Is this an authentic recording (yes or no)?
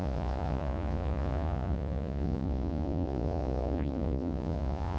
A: no